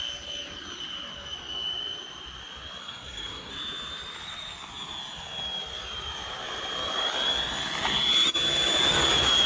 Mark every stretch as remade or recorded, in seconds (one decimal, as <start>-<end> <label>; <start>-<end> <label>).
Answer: 0.0-2.8 recorded; 2.8-3.5 remade; 3.5-9.5 recorded